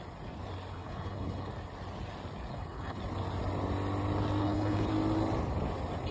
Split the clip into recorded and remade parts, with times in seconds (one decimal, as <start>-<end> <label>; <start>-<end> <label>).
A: 0.0-0.7 recorded; 0.7-1.5 remade; 1.5-2.5 recorded; 2.5-3.0 remade; 3.0-4.4 recorded; 4.4-4.9 remade; 4.9-6.1 recorded